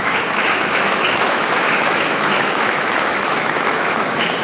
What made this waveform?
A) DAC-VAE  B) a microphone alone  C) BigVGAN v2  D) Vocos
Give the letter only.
A